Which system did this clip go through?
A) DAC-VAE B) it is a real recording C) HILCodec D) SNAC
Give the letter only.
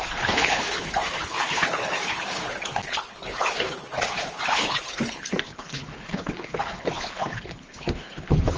C